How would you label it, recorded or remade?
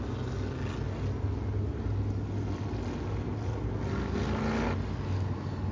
recorded